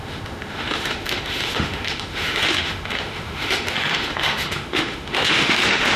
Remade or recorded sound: remade